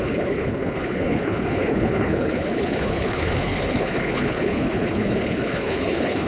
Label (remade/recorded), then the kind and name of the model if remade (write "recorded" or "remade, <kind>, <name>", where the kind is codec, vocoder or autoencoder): remade, codec, HILCodec